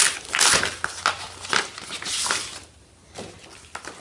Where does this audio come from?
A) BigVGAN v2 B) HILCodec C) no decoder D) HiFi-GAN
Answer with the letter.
C